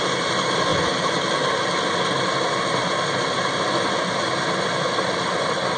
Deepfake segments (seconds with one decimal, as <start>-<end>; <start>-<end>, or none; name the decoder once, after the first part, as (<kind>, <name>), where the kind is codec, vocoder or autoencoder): none